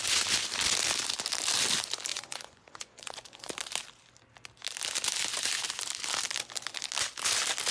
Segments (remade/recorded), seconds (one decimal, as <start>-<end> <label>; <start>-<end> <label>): 0.0-2.1 recorded; 2.1-3.5 remade; 3.5-7.7 recorded